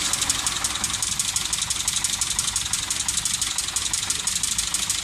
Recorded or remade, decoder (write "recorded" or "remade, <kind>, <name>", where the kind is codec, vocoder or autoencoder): recorded